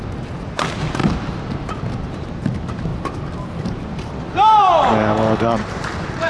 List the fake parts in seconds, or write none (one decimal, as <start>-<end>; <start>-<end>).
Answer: 1.0-2.3; 2.9-6.3